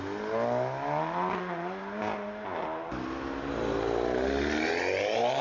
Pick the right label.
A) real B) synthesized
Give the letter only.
A